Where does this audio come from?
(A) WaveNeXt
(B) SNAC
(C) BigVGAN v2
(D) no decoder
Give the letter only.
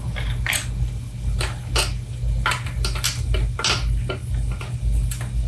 D